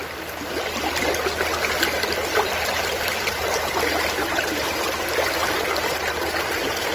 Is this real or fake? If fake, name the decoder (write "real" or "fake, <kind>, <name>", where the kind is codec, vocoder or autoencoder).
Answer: real